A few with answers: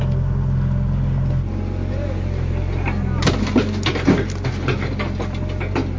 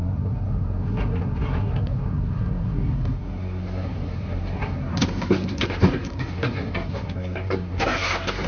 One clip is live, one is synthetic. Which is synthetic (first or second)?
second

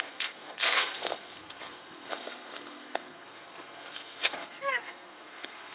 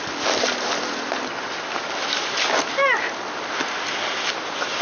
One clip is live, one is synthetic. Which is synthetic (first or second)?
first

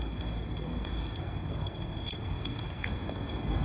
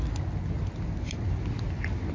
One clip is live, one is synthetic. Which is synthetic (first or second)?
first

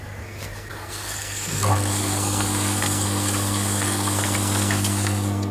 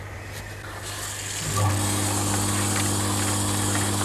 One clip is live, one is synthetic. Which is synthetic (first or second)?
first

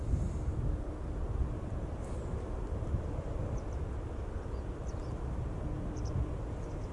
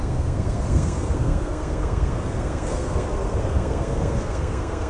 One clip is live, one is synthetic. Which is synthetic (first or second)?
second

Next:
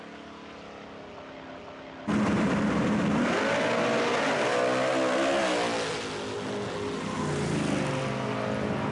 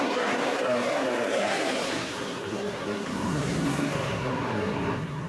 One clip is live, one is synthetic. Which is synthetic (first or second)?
second